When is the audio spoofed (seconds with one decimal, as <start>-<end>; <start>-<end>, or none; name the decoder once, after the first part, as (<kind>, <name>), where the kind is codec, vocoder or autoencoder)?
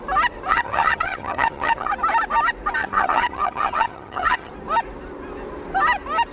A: 0.5-1.9 (vocoder, HiFi-GAN); 2.8-4.5